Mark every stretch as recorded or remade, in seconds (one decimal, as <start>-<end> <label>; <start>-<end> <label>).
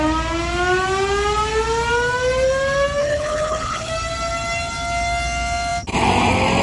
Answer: 0.0-3.0 recorded; 3.0-3.9 remade; 3.9-6.6 recorded